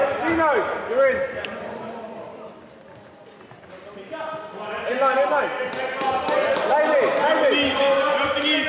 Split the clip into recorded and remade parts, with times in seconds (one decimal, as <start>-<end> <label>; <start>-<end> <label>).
0.0-8.7 recorded